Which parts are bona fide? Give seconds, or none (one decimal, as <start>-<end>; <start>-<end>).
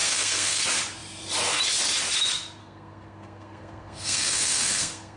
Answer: 0.6-2.6